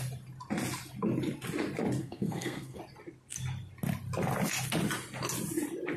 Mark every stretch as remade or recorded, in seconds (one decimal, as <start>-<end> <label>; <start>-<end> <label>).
0.0-2.0 recorded; 2.0-2.8 remade; 2.8-6.0 recorded